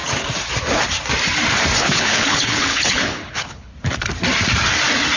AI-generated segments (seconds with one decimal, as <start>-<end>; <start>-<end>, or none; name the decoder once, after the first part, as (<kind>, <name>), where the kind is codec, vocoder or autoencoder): 1.8-3.7 (codec, HILCodec)